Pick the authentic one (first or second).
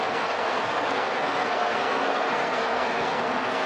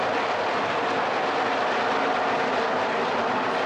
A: second